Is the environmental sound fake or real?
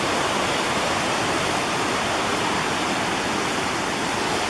real